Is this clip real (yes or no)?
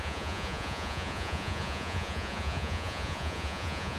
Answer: no